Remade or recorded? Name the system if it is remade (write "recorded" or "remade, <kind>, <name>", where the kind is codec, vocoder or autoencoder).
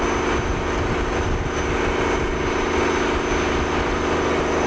recorded